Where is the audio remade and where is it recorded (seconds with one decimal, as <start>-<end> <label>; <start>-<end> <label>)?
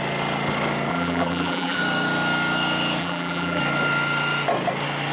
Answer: 0.0-0.9 recorded; 0.9-1.8 remade; 1.8-3.0 recorded; 3.0-3.6 remade; 3.6-5.1 recorded